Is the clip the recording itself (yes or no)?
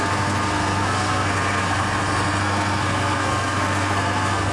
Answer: no